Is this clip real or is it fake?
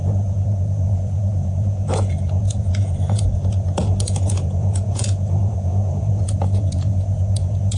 fake